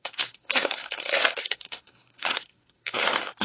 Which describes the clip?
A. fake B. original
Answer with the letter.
A